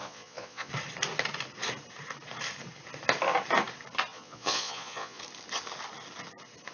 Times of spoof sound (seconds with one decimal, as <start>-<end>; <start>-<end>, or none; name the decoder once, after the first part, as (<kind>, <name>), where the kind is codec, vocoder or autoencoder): 0.0-0.7 (vocoder, Vocos); 4.1-5.2